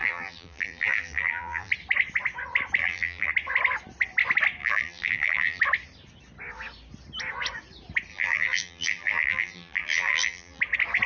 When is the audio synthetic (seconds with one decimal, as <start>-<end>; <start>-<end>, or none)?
0.0-1.7; 2.8-3.3; 4.6-5.6; 8.1-10.6